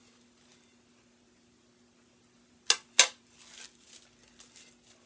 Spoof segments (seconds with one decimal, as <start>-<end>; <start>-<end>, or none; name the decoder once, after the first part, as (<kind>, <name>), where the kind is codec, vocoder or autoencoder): none